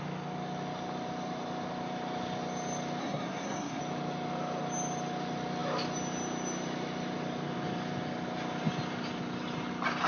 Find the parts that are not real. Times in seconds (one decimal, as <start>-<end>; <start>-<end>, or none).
3.0-3.8